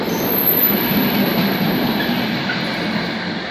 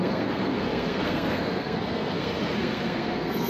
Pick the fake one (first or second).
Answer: second